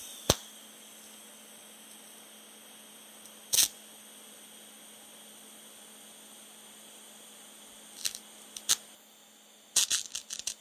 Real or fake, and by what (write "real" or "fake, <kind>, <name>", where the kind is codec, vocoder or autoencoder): real